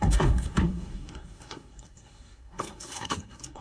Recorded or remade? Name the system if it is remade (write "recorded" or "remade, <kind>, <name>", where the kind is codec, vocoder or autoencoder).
remade, codec, SNAC